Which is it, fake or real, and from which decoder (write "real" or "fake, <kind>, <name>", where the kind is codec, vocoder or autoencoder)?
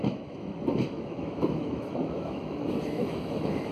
fake, autoencoder, DAC-VAE